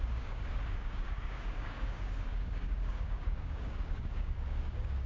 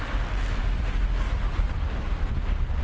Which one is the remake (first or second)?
first